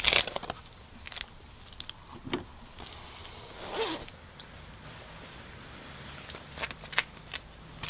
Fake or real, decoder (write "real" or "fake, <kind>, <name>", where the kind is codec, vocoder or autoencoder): real